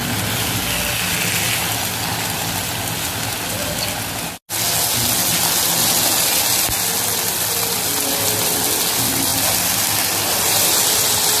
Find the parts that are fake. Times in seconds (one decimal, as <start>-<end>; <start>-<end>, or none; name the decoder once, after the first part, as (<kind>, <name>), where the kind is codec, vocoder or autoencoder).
none